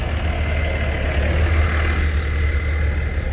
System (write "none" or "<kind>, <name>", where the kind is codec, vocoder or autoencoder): none